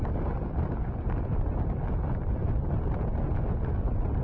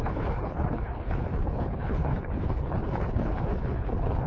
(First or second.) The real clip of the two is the first